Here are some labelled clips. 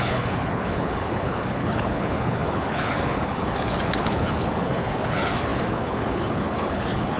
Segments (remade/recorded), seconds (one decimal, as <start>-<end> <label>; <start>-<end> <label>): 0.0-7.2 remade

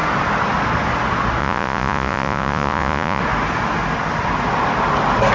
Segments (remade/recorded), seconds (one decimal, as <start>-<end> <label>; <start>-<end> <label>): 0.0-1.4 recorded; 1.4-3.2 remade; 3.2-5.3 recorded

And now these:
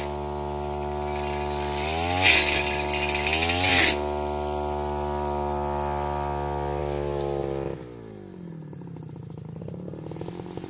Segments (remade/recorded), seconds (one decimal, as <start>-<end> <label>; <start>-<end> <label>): 0.0-10.7 recorded

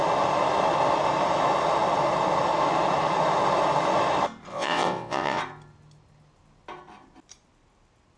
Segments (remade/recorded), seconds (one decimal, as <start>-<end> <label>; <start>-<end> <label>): 0.0-4.5 recorded; 4.5-5.4 remade; 5.4-8.2 recorded

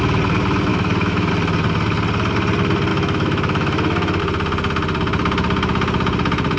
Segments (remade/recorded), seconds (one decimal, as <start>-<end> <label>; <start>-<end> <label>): 0.0-0.7 recorded; 0.7-1.3 remade; 1.3-2.9 recorded; 2.9-4.2 remade; 4.2-6.6 recorded

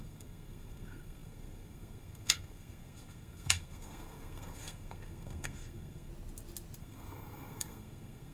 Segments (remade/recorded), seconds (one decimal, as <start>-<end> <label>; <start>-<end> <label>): 0.0-6.1 remade; 6.1-6.8 recorded; 6.8-8.3 remade

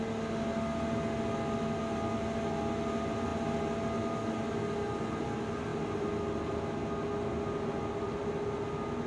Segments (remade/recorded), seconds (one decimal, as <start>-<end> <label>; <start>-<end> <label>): 0.0-9.1 recorded

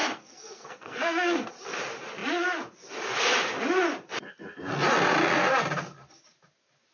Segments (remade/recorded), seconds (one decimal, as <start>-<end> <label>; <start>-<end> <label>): 0.0-1.5 remade; 1.5-6.9 recorded